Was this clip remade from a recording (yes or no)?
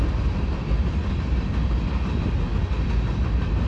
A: no